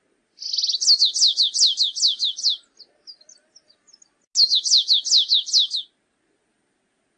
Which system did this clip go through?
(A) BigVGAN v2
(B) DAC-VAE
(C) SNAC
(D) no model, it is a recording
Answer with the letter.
D